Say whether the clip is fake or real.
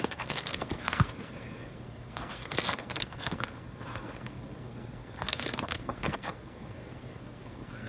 fake